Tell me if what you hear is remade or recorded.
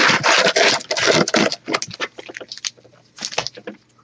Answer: recorded